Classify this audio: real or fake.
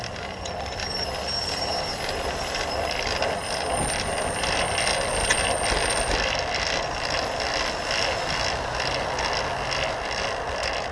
real